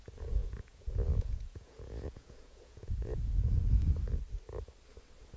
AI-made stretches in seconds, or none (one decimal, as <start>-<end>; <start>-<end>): 0.4-3.6